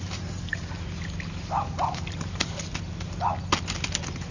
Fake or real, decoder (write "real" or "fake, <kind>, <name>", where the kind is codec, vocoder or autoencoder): real